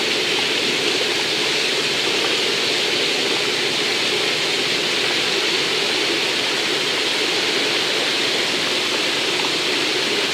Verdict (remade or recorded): recorded